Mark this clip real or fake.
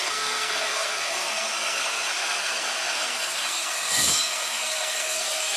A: fake